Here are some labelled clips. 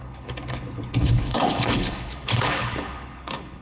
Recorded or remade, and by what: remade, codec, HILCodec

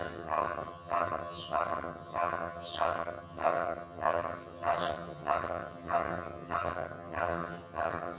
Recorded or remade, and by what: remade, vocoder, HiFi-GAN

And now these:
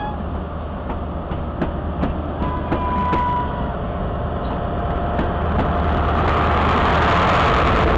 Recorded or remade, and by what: recorded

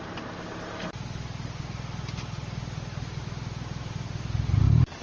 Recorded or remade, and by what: recorded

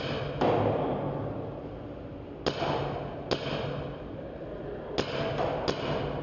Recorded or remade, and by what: recorded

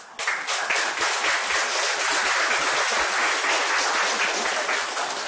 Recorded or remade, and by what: recorded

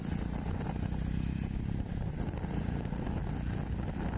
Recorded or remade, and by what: recorded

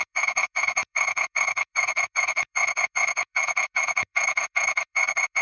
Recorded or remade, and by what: remade, autoencoder, DAC-VAE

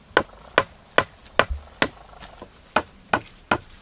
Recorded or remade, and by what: recorded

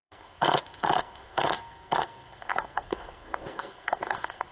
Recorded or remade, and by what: remade, codec, SNAC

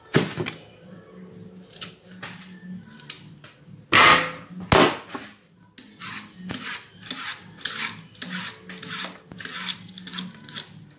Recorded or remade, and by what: recorded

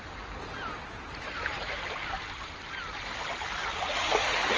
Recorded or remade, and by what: recorded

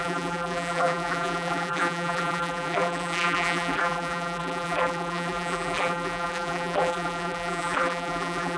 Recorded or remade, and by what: remade, vocoder, BigVGAN v2